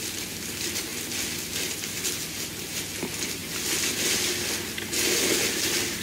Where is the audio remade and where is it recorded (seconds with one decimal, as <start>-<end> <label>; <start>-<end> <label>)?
0.0-6.0 recorded